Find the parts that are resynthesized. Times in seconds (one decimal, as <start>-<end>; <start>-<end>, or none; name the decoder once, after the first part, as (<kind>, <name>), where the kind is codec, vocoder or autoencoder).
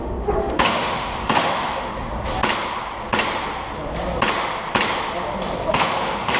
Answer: 0.0-1.9 (autoencoder, DAC-VAE); 5.7-6.4